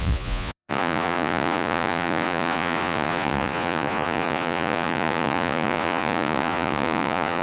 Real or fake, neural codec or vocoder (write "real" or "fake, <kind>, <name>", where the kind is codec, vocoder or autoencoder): fake, vocoder, Vocos